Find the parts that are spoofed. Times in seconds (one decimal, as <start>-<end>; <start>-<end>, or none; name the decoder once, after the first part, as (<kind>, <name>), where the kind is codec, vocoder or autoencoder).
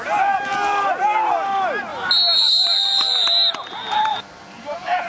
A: 4.1-5.1 (vocoder, BigVGAN v2)